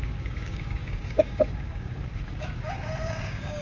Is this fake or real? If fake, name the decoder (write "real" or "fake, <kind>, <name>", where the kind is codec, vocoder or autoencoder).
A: fake, codec, DAC